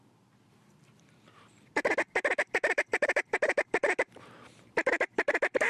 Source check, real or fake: fake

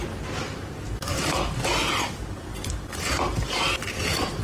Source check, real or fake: real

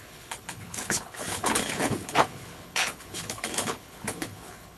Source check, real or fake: fake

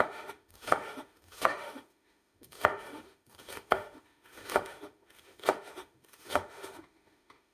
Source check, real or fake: fake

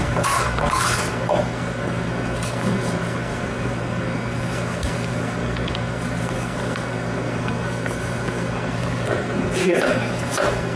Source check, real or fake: fake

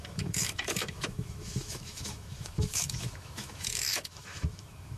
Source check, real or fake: fake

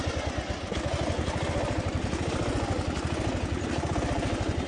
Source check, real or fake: real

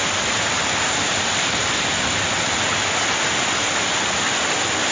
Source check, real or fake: real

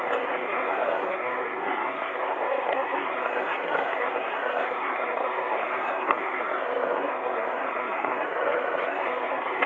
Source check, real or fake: fake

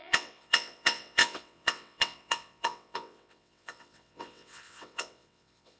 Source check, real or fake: fake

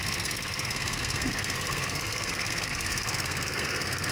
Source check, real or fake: fake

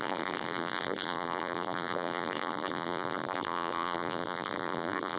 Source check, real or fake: fake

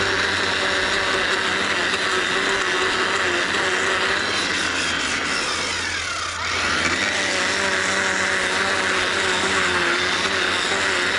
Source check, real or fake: real